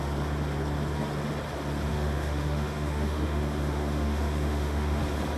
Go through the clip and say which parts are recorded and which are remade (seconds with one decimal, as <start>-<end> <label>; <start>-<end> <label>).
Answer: 0.0-1.9 recorded; 1.9-5.0 remade; 5.0-5.4 recorded

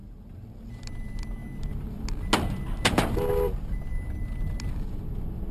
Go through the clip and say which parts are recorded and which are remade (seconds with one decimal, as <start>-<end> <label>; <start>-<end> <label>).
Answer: 0.0-5.5 recorded

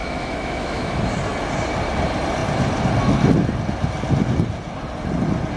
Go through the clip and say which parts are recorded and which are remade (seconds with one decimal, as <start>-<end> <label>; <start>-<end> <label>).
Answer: 0.0-1.0 remade; 1.0-5.6 recorded

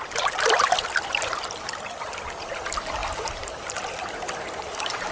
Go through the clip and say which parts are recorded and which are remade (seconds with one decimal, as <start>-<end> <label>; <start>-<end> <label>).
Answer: 0.0-5.1 recorded

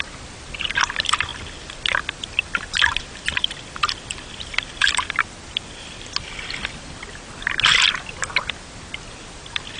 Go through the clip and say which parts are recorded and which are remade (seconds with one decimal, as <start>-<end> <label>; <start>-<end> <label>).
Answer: 0.0-9.8 recorded